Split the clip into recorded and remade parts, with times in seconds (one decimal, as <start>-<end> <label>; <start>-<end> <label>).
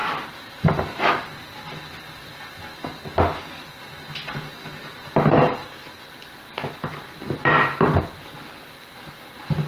0.0-0.7 remade; 0.7-5.4 recorded; 5.4-6.1 remade; 6.1-9.7 recorded